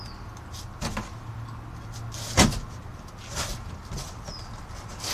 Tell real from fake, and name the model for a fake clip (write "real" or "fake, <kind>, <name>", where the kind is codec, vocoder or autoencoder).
real